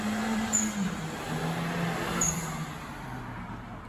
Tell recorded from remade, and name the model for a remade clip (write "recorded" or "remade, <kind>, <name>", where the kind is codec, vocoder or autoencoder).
recorded